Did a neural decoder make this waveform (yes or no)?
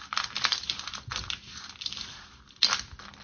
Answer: no